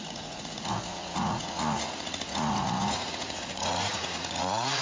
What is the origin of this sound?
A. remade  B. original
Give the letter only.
A